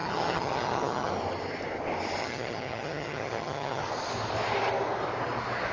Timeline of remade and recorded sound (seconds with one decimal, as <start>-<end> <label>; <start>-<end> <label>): 0.0-1.1 remade; 1.1-2.2 recorded; 2.2-3.8 remade; 3.8-5.7 recorded

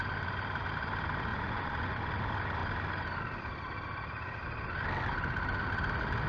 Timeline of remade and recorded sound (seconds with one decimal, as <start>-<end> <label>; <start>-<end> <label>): 0.0-1.3 recorded; 1.3-2.0 remade; 2.0-6.3 recorded

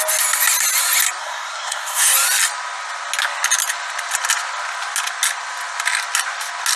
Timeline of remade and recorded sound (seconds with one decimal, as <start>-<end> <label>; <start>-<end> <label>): 0.0-1.2 recorded; 1.2-2.1 remade; 2.1-6.8 recorded

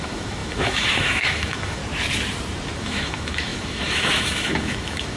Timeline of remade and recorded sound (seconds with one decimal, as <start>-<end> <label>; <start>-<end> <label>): 0.0-1.8 remade; 1.8-2.8 recorded; 2.8-5.2 remade

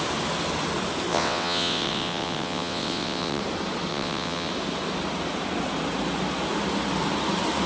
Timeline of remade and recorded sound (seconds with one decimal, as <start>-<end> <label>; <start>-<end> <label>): 0.0-1.1 recorded; 1.1-3.4 remade; 3.4-3.9 recorded; 3.9-4.5 remade; 4.5-7.7 recorded

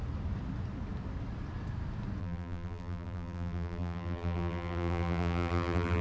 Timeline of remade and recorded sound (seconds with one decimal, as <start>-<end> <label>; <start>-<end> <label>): 0.0-2.2 recorded; 2.2-6.0 remade